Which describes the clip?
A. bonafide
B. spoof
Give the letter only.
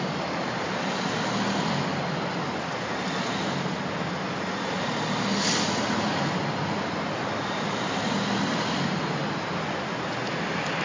A